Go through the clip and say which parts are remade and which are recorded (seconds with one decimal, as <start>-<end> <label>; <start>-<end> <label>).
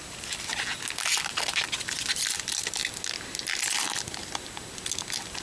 0.0-5.4 recorded